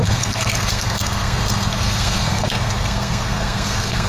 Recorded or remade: remade